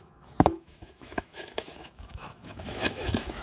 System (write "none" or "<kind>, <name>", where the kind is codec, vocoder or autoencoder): autoencoder, DAC-VAE